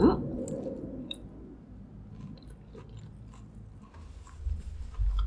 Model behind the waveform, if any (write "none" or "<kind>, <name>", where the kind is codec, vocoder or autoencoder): none